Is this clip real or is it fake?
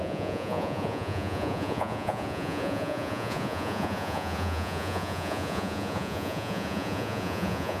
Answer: fake